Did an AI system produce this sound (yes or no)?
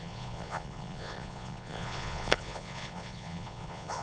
yes